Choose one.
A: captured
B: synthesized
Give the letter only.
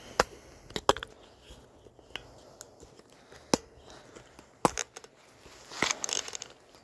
A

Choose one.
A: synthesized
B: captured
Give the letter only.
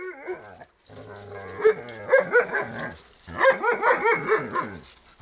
B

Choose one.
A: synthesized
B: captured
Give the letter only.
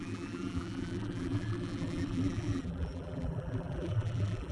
A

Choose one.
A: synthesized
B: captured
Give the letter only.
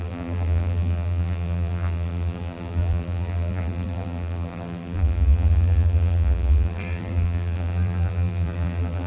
A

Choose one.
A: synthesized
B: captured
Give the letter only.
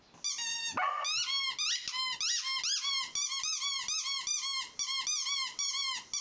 B